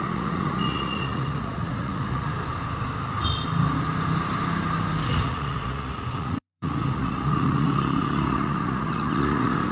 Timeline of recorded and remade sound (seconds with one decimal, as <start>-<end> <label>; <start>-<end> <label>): 0.0-2.3 remade; 2.3-5.1 recorded; 5.1-9.7 remade